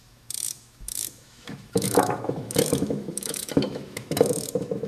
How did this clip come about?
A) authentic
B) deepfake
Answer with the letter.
B